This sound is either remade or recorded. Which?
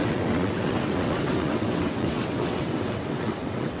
remade